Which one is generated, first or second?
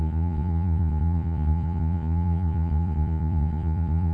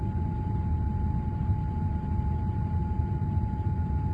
first